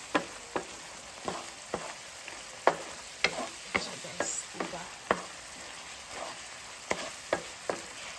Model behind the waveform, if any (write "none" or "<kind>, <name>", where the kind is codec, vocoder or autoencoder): none